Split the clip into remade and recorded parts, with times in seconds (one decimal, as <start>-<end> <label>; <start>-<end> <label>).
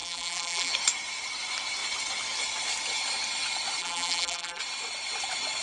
0.0-0.7 remade; 0.7-3.8 recorded; 3.8-4.6 remade; 4.6-5.6 recorded